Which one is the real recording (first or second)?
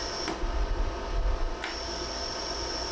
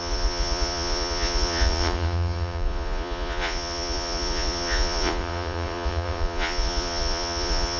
first